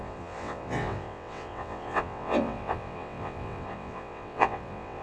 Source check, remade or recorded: remade